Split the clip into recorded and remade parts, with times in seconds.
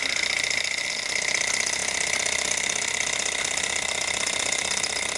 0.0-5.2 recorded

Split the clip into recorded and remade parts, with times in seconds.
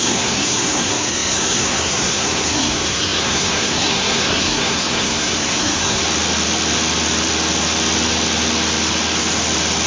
0.0-6.0 remade; 6.0-9.9 recorded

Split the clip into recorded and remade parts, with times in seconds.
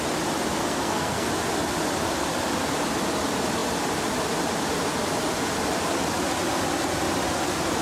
0.0-0.6 recorded; 0.6-1.3 remade; 1.3-7.8 recorded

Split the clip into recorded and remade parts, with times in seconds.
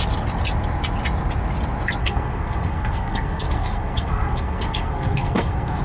0.0-2.0 recorded; 2.0-5.8 remade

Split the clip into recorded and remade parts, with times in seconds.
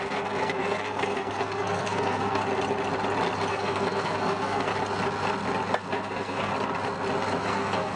0.0-2.4 remade; 2.4-3.5 recorded; 3.5-4.7 remade; 4.7-5.8 recorded; 5.8-6.5 remade; 6.5-7.4 recorded; 7.4-8.0 remade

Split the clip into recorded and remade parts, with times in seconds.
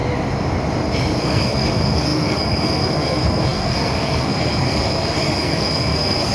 0.0-1.2 recorded; 1.2-6.3 remade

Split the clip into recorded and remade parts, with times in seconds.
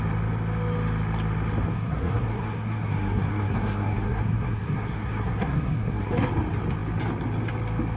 0.0-1.7 recorded; 1.7-6.3 remade; 6.3-8.0 recorded